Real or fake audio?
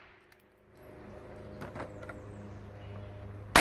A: real